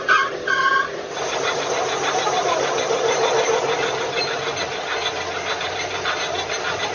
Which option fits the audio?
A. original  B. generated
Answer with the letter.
A